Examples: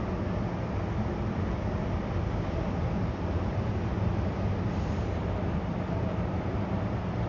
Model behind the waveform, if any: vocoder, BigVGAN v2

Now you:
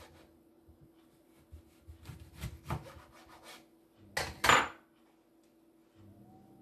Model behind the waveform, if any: none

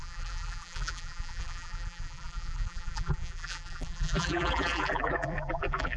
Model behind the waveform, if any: vocoder, BigVGAN v2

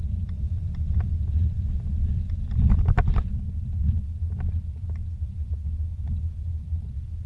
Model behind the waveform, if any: none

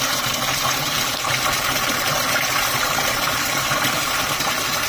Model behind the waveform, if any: vocoder, BigVGAN v2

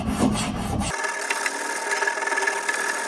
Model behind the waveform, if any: none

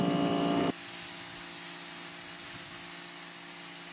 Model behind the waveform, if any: none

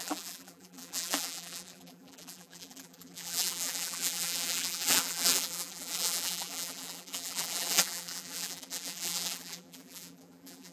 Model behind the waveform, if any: vocoder, BigVGAN v2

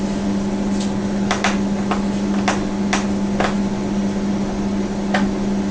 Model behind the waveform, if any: none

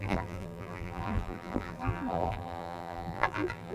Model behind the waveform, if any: vocoder, BigVGAN v2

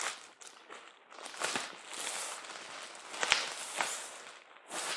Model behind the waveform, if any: none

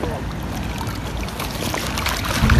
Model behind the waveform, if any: none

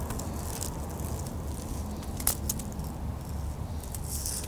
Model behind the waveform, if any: none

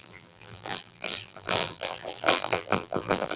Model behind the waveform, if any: vocoder, BigVGAN v2